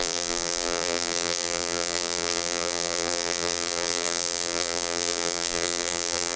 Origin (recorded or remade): remade